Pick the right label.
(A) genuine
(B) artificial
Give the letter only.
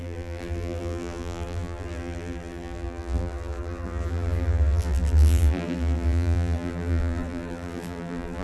B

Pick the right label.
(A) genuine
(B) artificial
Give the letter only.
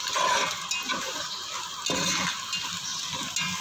A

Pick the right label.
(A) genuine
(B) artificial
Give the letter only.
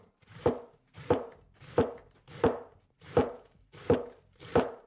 B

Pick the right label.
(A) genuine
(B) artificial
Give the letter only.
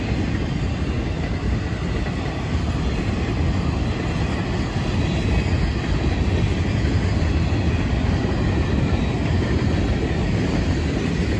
A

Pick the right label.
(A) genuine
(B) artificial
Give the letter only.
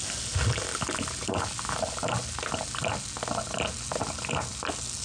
A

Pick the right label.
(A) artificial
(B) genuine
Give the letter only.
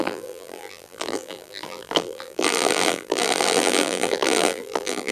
A